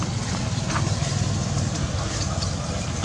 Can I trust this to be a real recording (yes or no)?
yes